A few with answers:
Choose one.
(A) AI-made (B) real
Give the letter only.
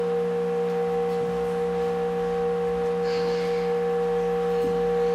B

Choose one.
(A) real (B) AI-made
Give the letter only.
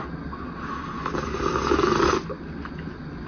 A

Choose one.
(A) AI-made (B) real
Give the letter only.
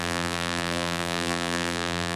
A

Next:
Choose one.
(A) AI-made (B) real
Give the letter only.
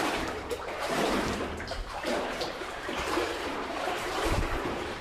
A